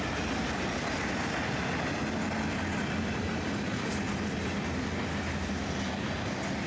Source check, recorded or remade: recorded